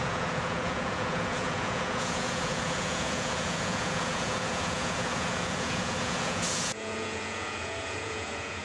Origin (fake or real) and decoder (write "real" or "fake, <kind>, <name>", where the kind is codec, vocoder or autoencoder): fake, vocoder, Vocos